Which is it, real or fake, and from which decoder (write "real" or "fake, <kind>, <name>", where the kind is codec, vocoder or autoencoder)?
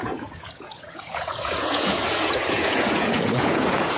fake, vocoder, Vocos